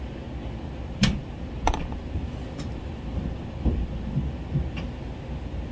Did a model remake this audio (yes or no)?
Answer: no